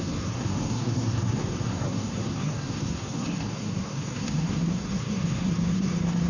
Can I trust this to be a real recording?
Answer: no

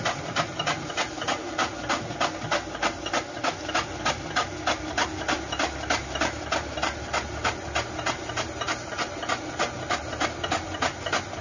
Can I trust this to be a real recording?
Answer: yes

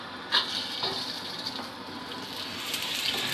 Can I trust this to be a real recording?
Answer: yes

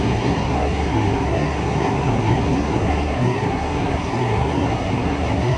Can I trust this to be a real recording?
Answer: no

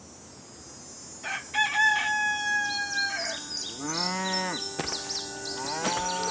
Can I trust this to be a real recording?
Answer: yes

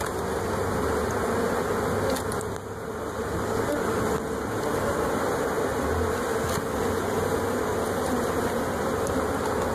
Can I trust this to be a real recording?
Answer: yes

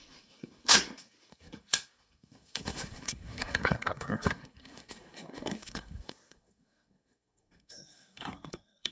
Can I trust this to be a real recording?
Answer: no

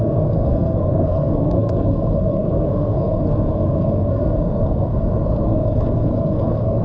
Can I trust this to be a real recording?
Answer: no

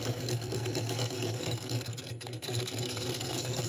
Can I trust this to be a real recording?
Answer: no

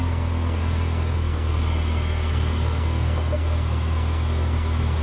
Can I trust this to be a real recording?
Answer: no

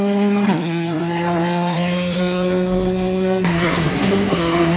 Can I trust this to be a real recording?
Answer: no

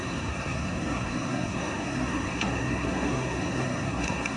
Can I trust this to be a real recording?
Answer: no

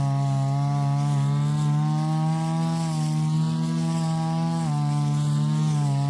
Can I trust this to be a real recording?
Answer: yes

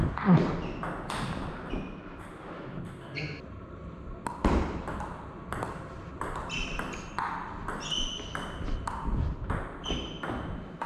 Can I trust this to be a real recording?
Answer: yes